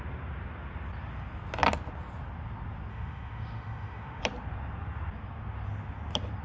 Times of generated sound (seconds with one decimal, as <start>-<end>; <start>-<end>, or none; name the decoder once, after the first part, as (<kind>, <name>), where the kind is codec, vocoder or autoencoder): 2.9-4.2 (autoencoder, DAC-VAE)